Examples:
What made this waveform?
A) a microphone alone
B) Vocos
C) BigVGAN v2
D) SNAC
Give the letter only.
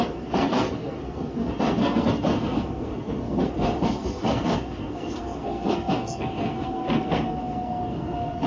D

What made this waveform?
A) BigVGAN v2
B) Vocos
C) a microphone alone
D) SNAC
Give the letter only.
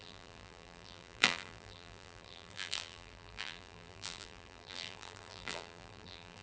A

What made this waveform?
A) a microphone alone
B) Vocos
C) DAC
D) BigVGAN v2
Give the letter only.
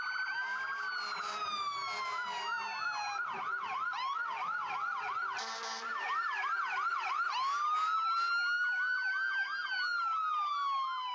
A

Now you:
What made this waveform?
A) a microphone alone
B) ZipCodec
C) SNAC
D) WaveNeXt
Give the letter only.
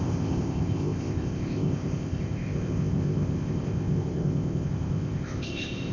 B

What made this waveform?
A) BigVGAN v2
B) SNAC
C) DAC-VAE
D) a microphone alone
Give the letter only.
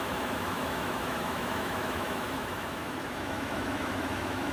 C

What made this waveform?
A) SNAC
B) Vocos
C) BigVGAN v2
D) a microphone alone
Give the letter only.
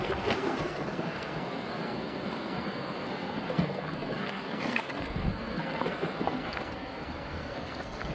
A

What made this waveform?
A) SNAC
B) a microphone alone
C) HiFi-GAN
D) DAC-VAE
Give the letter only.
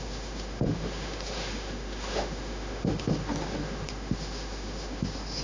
D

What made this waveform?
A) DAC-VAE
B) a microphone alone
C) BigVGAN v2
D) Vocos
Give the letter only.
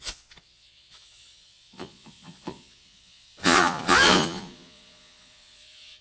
D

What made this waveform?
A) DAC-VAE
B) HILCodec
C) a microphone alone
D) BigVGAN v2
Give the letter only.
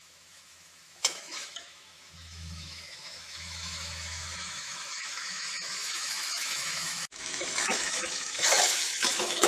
A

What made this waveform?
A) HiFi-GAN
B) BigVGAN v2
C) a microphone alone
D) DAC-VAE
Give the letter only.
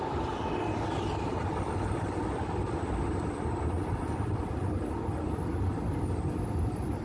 C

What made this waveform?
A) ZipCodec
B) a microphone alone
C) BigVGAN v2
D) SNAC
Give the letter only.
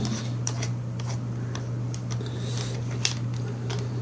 C